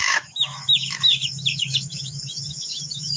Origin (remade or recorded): remade